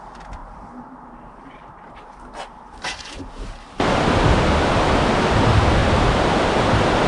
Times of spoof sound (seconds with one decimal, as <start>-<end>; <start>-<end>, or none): 0.4-4.7; 5.8-6.4